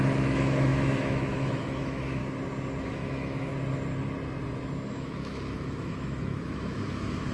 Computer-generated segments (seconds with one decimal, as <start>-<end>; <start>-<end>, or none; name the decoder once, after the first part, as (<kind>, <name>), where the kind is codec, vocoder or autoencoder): 0.0-2.2 (autoencoder, DAC-VAE); 2.8-3.5; 4.9-7.3